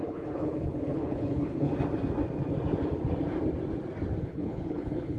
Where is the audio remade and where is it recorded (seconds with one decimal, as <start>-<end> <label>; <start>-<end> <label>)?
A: 0.0-1.7 remade; 1.7-4.2 recorded; 4.2-5.2 remade